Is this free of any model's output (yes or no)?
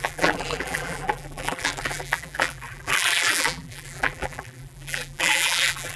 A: no